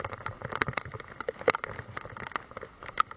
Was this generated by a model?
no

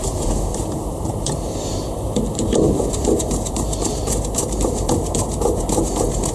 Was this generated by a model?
yes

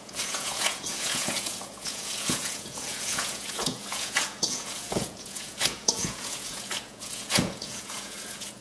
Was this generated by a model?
yes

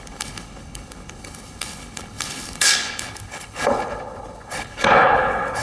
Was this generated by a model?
yes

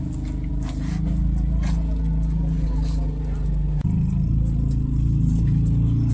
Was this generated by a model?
no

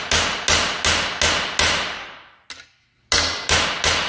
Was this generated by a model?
no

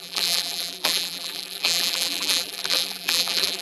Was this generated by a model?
yes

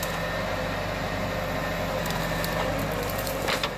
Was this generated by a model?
no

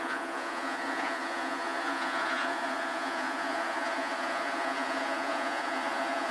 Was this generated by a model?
yes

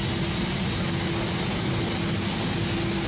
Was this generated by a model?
no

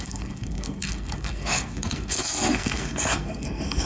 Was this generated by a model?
yes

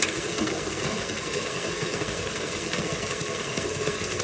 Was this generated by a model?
yes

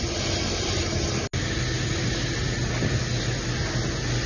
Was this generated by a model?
no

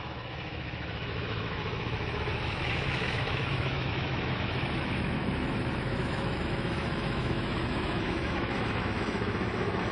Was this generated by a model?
yes